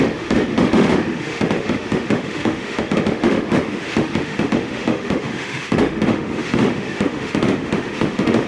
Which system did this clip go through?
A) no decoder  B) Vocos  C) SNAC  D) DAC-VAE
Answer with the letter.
D